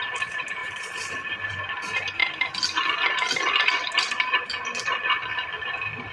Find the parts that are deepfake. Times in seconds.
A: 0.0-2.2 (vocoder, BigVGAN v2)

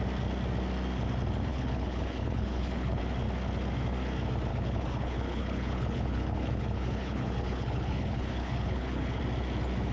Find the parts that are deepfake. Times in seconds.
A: 1.5-3.0 (codec, HILCodec); 4.5-9.2

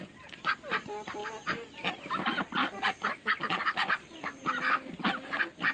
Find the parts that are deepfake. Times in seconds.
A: none